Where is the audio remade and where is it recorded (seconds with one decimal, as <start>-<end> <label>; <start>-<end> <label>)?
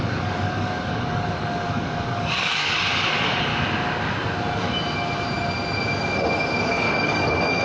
0.0-3.5 remade; 3.5-6.7 recorded; 6.7-7.6 remade